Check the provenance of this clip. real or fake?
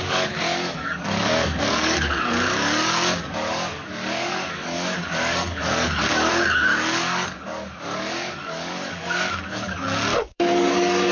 fake